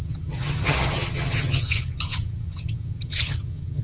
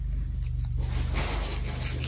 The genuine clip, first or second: second